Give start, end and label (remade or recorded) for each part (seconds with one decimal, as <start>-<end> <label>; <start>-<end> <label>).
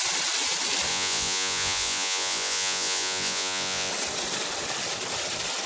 0.0-0.9 recorded; 0.9-3.9 remade; 3.9-5.7 recorded